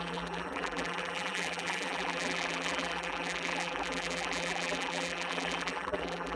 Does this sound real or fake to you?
fake